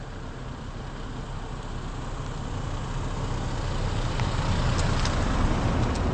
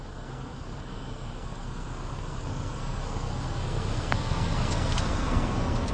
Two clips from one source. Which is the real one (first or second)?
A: first